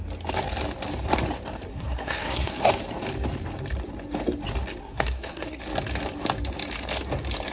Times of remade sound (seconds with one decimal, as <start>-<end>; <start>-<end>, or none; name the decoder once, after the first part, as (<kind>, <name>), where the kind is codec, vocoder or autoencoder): 1.7-2.7 (codec, SNAC); 4.8-5.6